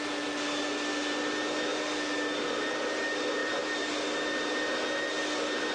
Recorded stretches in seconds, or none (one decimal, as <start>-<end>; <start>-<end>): 0.0-3.4; 3.9-5.7